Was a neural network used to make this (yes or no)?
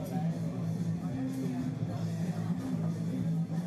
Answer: no